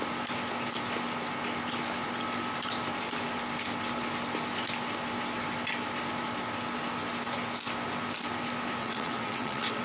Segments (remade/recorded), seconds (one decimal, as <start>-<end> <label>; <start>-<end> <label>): 0.0-8.8 recorded; 8.8-9.8 remade